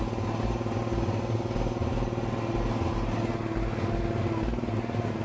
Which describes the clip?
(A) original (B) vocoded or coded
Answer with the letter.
A